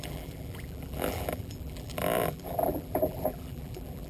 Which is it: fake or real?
fake